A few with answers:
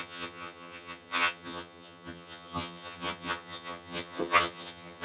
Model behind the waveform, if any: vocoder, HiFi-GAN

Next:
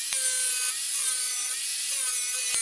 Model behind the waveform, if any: none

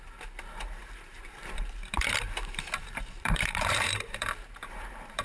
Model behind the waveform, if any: vocoder, BigVGAN v2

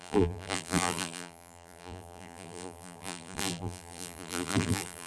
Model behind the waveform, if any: vocoder, BigVGAN v2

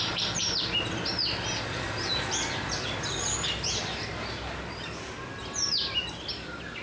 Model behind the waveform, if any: none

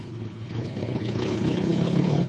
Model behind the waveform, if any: codec, HILCodec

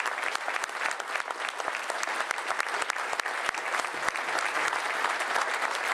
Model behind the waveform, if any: none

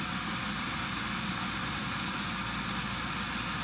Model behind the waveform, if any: none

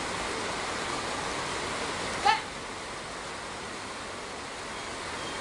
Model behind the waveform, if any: none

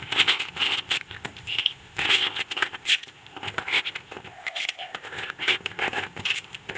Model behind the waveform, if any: codec, ZipCodec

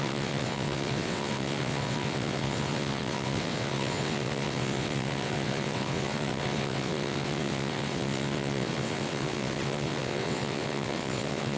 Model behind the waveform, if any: vocoder, WaveNeXt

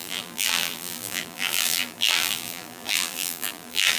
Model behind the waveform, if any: vocoder, BigVGAN v2